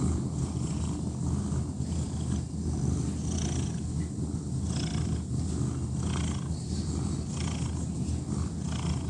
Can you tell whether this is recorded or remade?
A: recorded